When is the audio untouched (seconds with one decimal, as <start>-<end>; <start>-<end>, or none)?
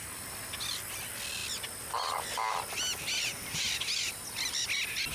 0.0-5.1